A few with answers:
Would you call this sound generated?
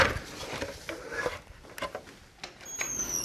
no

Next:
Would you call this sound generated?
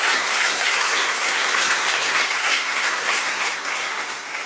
yes